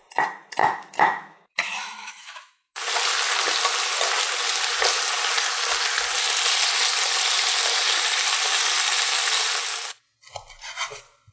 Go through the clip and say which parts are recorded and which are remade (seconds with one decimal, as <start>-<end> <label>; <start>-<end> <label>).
0.0-0.6 recorded; 0.6-2.8 remade; 2.8-11.3 recorded